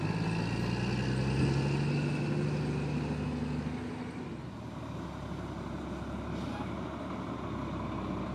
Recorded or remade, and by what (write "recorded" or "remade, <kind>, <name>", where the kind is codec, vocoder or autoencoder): recorded